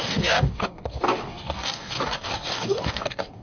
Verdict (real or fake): fake